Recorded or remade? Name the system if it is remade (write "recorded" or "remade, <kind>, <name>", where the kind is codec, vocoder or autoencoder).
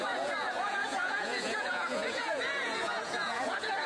remade, vocoder, Vocos